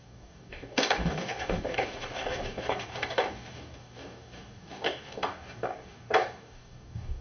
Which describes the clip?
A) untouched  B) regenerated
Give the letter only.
B